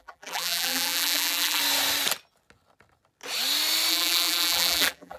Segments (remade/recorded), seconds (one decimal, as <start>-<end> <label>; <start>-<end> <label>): 0.0-1.6 remade; 1.6-3.9 recorded; 3.9-5.2 remade